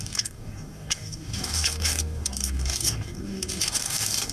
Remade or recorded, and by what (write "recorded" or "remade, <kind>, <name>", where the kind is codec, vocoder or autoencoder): remade, codec, DAC